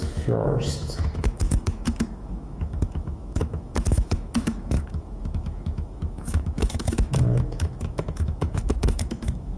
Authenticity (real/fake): fake